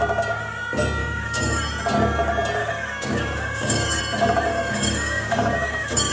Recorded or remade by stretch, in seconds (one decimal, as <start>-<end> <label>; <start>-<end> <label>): 0.0-1.0 recorded; 1.0-1.6 remade; 1.6-2.6 recorded; 2.6-4.0 remade; 4.0-4.5 recorded; 4.5-6.1 remade